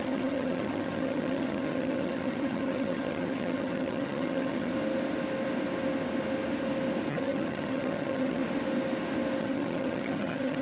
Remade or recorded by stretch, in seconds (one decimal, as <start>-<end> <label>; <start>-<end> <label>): 0.0-4.7 remade; 4.7-7.1 recorded; 7.1-8.4 remade; 8.4-9.4 recorded; 9.4-10.6 remade